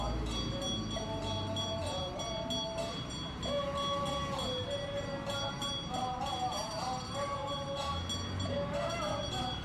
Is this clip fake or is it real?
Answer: real